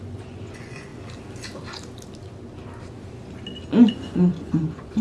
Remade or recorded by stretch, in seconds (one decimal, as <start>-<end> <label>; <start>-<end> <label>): 0.0-0.9 remade; 0.9-3.9 recorded; 3.9-5.0 remade